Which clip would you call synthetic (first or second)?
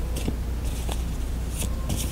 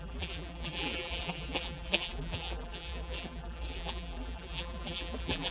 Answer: second